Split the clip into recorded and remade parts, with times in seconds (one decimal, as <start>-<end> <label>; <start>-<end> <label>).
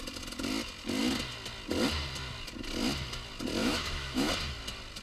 0.0-3.6 recorded; 3.6-4.3 remade; 4.3-5.0 recorded